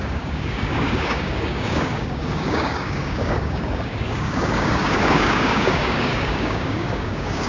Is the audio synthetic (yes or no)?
yes